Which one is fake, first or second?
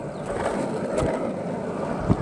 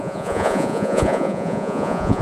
second